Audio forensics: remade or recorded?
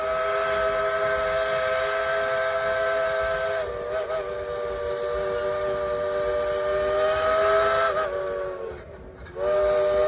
recorded